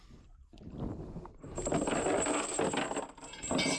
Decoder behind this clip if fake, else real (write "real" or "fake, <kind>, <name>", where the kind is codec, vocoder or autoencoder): real